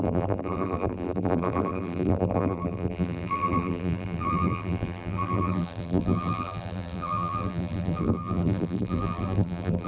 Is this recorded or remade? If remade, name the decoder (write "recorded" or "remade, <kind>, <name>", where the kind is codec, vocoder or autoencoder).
remade, vocoder, BigVGAN v2